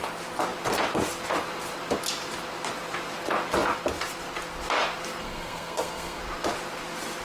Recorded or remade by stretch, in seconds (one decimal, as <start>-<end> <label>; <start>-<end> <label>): 0.0-5.2 recorded; 5.2-6.2 remade; 6.2-7.2 recorded